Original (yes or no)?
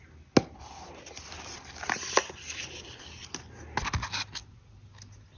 yes